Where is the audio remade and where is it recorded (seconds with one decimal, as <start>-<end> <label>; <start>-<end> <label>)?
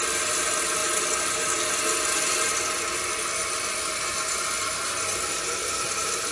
0.0-6.3 recorded